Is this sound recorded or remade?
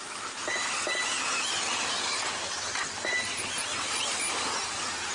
recorded